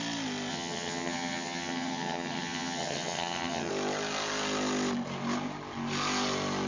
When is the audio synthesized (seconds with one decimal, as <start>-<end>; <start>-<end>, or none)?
0.5-3.7